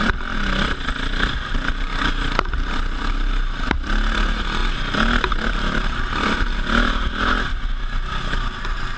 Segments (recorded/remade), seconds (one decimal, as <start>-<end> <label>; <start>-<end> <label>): 0.0-9.0 recorded